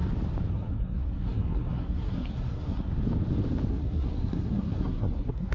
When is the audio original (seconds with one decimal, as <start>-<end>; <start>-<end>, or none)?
0.0-0.5; 2.9-3.7